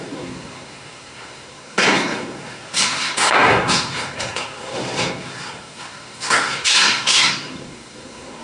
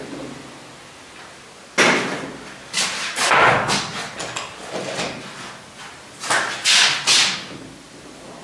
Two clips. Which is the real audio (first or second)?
second